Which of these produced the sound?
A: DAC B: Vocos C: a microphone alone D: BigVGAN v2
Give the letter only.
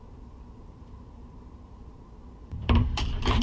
D